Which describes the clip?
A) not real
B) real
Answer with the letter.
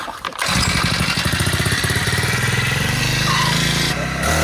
B